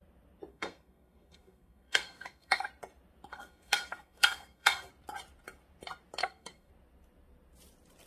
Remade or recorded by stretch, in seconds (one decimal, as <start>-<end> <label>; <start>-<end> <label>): 0.0-0.5 recorded; 0.5-2.7 remade; 2.7-3.3 recorded; 3.3-4.9 remade; 4.9-6.2 recorded; 6.2-6.7 remade; 6.7-8.1 recorded